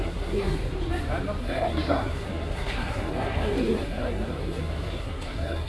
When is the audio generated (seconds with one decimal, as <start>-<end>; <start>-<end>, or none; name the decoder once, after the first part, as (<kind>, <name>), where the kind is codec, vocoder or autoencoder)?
0.0-0.6 (codec, SNAC); 1.4-5.7

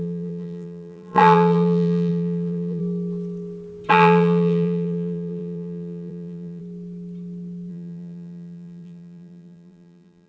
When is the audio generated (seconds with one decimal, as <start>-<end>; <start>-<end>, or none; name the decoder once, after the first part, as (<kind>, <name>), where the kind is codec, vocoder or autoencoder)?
0.0-2.8 (vocoder, BigVGAN v2); 3.9-6.6; 7.7-10.3